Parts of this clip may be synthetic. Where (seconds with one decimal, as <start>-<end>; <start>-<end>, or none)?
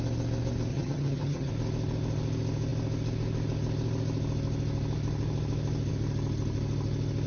0.7-1.5